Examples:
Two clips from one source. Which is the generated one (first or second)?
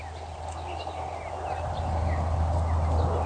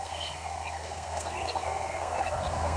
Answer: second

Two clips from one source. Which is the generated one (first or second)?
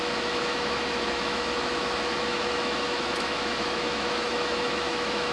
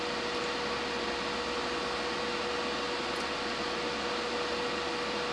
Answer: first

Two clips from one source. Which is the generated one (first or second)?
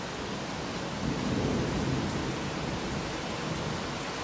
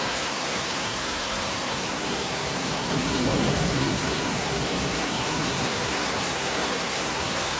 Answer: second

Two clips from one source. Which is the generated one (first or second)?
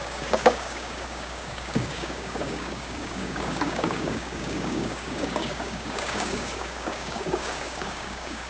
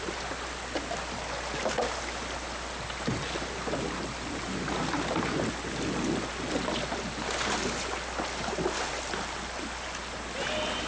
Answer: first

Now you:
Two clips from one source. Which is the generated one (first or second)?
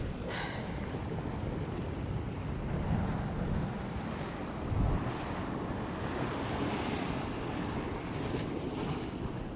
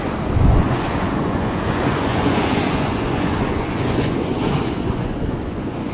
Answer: second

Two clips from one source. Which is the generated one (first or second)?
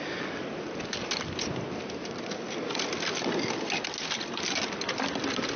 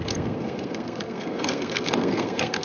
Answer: second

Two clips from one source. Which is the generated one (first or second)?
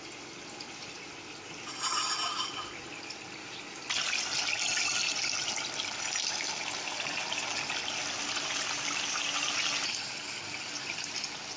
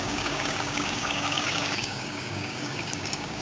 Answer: second